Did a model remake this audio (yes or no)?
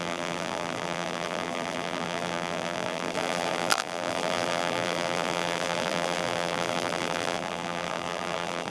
yes